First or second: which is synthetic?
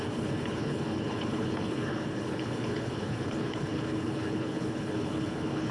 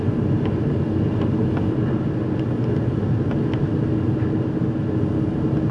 first